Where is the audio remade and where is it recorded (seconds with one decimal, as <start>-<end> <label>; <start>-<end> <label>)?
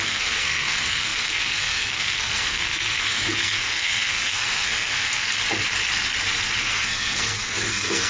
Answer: 0.0-5.3 remade; 5.3-6.6 recorded; 6.6-8.1 remade